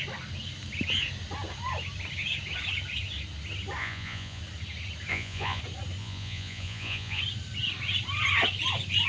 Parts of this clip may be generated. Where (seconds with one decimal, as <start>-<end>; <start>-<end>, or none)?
3.8-4.4; 5.1-5.6; 6.0-7.2

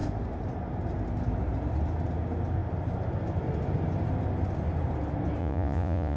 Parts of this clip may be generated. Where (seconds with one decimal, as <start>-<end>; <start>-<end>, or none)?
5.4-6.2

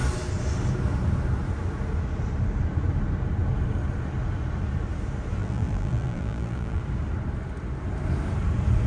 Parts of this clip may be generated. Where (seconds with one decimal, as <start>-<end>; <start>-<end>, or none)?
5.4-6.8

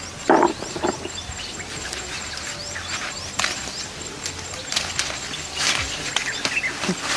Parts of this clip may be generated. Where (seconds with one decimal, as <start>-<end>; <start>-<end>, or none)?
none

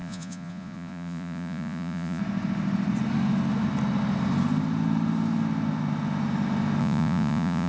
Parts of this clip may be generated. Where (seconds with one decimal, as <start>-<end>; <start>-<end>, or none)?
0.0-2.2; 6.8-7.7

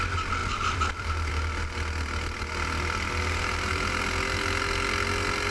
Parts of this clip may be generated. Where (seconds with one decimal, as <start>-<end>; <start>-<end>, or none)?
0.4-1.3

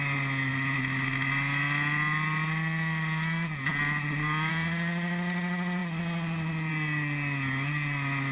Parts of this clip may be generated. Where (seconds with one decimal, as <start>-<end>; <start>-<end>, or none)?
none

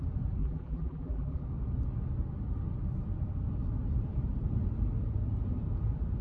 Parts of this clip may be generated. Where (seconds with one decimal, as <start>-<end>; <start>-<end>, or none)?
0.4-1.4